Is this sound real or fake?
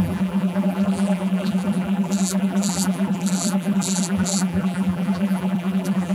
fake